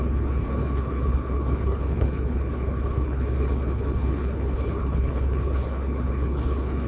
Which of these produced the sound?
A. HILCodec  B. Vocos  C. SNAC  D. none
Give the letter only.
A